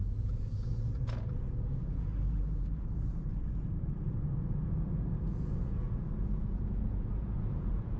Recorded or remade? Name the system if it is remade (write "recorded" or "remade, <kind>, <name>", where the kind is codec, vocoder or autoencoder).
remade, vocoder, Vocos